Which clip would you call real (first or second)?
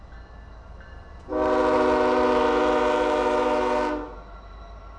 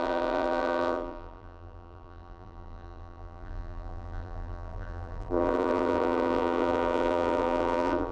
first